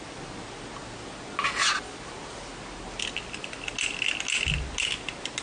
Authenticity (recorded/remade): recorded